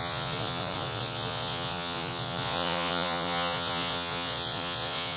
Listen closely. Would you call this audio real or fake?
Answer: fake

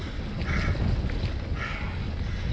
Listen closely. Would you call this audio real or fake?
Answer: real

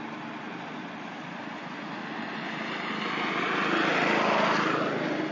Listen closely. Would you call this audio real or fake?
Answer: real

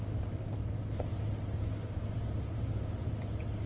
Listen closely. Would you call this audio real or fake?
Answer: real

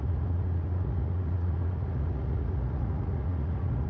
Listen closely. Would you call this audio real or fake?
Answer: fake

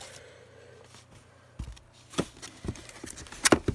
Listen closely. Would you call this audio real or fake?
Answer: real